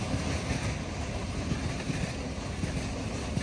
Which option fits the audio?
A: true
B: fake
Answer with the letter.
A